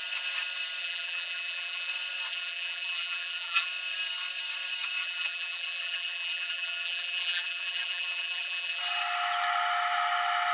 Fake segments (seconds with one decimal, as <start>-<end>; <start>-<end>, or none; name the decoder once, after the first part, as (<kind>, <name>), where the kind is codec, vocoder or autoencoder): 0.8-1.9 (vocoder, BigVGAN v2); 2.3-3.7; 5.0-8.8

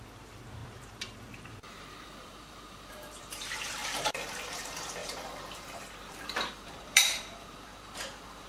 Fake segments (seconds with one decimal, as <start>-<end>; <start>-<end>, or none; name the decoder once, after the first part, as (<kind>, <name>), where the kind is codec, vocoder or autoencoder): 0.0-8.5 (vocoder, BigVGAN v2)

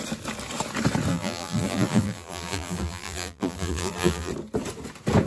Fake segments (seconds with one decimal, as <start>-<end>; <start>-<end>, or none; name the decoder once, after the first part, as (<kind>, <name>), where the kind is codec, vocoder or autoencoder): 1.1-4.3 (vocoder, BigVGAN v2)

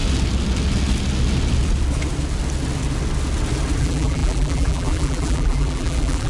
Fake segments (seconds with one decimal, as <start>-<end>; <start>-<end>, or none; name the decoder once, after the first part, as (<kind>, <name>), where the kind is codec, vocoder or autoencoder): 3.8-6.3 (vocoder, BigVGAN v2)